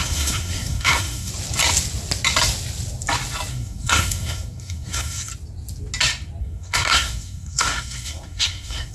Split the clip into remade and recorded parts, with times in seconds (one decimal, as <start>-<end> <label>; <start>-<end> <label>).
0.0-1.3 remade; 1.3-3.5 recorded; 3.5-5.3 remade; 5.3-6.4 recorded; 6.4-8.9 remade

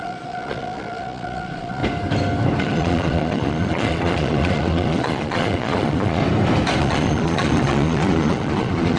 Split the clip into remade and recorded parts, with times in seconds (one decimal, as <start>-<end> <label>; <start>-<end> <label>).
0.0-1.8 remade; 1.8-2.6 recorded; 2.6-6.2 remade; 6.2-6.8 recorded; 6.8-9.0 remade

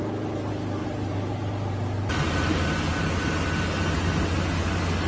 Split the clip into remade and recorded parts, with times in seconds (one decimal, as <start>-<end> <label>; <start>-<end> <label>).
0.0-0.8 recorded; 0.8-3.2 remade; 3.2-5.1 recorded

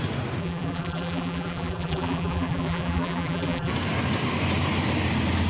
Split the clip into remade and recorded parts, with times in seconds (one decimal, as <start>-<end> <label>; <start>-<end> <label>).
0.0-0.4 recorded; 0.4-3.7 remade; 3.7-5.5 recorded

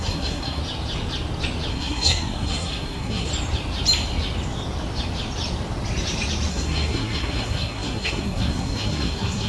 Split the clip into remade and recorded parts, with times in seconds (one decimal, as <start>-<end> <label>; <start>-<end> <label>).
0.0-0.6 remade; 0.6-1.7 recorded; 1.7-3.3 remade; 3.3-6.5 recorded; 6.5-9.5 remade

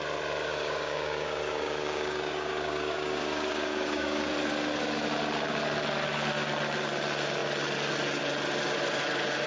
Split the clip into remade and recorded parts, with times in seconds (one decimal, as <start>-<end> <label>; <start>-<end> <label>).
0.0-0.5 recorded; 0.5-4.3 remade; 4.3-9.5 recorded